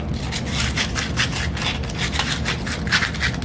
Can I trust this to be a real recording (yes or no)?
yes